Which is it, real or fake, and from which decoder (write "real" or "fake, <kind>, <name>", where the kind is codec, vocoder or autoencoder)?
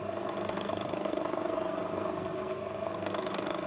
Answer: fake, codec, SNAC